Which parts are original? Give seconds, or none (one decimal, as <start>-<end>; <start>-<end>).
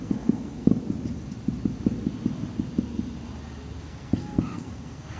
0.7-3.8